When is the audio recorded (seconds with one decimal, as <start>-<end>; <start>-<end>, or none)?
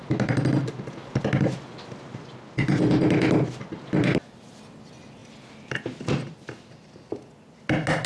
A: 0.0-8.1